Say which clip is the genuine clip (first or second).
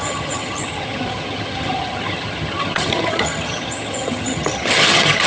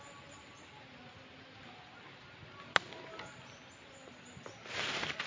second